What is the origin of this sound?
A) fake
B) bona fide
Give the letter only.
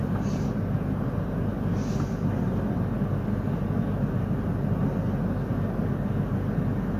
B